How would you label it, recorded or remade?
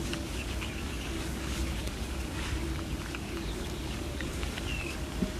remade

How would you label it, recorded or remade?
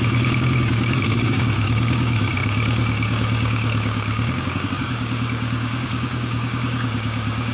remade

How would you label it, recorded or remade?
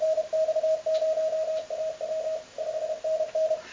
recorded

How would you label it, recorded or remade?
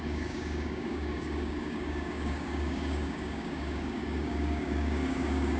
remade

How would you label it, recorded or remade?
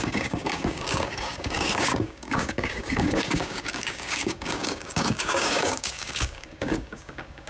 remade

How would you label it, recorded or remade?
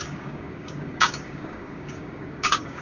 remade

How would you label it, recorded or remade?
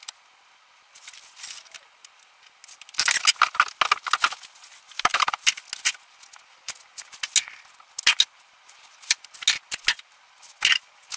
recorded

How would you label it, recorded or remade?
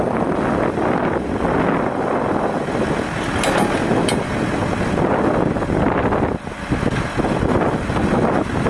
recorded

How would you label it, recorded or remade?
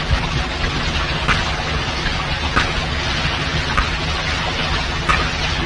recorded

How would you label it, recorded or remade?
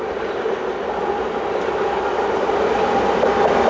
recorded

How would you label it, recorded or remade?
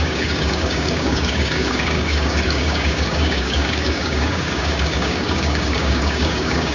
remade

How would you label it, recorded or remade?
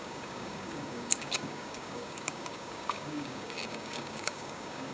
remade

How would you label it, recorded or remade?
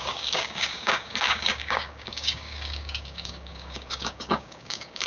remade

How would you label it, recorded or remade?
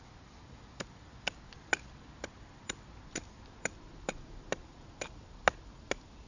recorded